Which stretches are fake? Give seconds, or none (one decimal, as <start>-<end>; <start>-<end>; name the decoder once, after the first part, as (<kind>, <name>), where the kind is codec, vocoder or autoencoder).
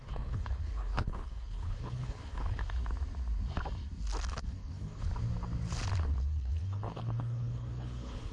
0.0-2.6 (codec, HILCodec); 4.3-5.1; 6.0-8.3